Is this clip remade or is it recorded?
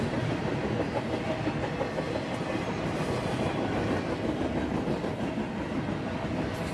recorded